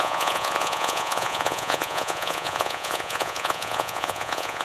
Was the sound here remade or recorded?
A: remade